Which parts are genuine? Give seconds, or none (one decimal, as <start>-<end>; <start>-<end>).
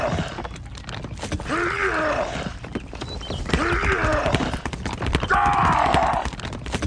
0.0-6.9